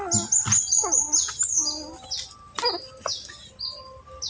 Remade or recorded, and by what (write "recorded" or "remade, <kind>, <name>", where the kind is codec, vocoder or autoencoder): recorded